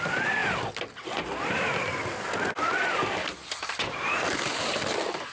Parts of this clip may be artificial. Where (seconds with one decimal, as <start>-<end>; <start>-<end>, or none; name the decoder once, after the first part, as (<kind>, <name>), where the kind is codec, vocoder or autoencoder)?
none